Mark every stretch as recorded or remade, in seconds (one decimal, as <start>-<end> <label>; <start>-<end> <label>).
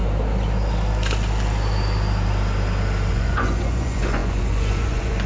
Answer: 0.0-3.1 recorded; 3.1-5.3 remade